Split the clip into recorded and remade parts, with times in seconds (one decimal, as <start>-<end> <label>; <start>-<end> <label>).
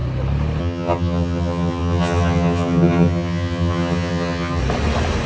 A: 0.0-0.6 recorded; 0.6-4.6 remade; 4.6-5.3 recorded